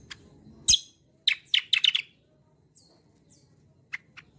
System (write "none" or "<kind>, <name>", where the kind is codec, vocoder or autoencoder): none